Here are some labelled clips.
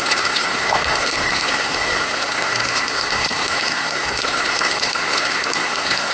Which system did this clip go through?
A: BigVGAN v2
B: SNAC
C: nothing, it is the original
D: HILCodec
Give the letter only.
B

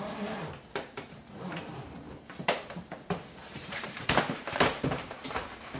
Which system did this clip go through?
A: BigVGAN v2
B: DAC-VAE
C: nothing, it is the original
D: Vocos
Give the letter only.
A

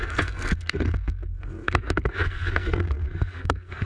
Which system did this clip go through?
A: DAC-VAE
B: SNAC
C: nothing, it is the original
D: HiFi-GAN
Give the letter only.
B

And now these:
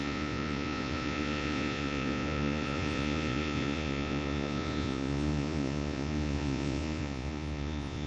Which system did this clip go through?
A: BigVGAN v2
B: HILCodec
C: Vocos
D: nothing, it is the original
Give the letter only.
C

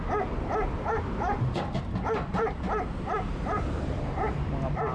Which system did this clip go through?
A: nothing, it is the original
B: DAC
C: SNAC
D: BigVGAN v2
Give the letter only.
D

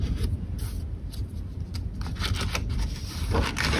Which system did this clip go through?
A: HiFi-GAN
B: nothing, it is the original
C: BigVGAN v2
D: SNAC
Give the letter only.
B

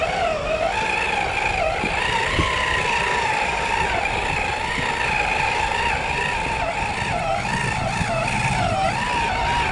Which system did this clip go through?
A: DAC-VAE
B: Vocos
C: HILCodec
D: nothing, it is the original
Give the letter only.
D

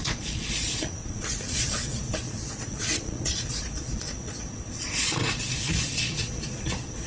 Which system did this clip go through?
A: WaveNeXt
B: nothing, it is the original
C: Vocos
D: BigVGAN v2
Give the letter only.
C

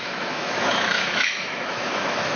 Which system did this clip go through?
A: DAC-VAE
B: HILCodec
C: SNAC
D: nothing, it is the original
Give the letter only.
A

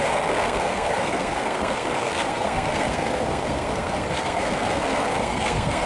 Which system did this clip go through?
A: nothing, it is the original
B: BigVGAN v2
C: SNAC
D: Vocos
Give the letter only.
C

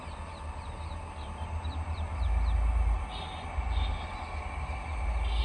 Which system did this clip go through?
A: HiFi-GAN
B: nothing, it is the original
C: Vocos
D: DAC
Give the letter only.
B